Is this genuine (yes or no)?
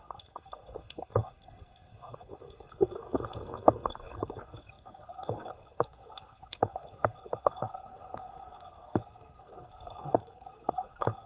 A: no